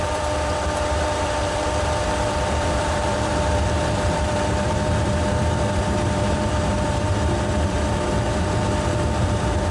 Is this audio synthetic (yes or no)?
yes